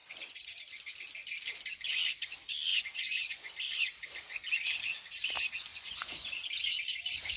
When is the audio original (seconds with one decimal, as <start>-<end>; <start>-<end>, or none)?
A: 0.6-2.7; 3.5-5.7; 6.3-7.4